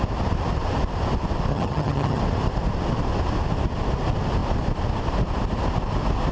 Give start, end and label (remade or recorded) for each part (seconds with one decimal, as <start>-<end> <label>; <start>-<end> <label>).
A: 0.0-1.5 recorded; 1.5-2.2 remade; 2.2-6.3 recorded